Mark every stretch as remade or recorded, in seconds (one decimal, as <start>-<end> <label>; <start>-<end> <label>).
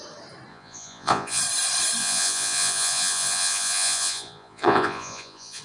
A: 0.0-0.5 recorded; 0.5-1.4 remade; 1.4-2.0 recorded; 2.0-5.6 remade